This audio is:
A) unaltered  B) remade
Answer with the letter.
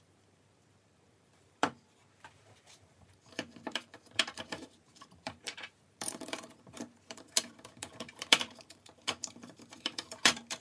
B